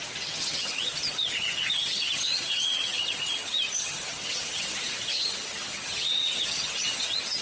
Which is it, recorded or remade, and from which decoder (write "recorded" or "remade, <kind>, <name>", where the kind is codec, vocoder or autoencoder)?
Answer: remade, vocoder, HiFi-GAN